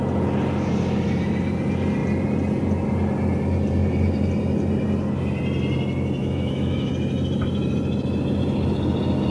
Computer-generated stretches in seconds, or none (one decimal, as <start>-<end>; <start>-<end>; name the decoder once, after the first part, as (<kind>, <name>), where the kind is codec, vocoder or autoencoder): 6.2-6.9 (autoencoder, DAC-VAE)